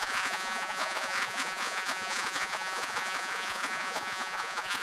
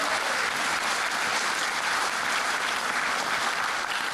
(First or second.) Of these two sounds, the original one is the second